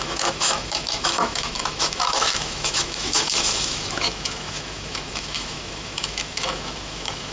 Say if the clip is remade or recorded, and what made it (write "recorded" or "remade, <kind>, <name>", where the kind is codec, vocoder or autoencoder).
remade, autoencoder, DAC-VAE